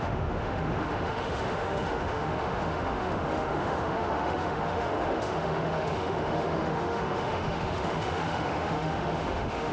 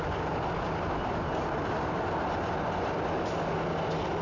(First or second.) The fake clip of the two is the first